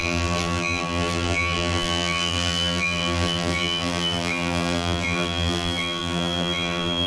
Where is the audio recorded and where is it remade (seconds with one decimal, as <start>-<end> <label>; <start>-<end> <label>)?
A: 0.0-7.1 remade